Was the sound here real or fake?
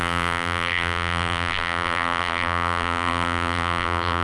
fake